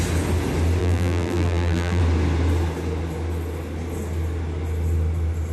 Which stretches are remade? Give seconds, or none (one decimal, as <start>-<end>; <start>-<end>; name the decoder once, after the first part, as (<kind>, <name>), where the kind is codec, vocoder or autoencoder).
0.8-2.0 (vocoder, BigVGAN v2)